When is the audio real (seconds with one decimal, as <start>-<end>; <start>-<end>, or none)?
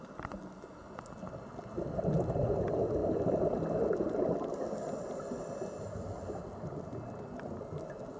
0.0-8.2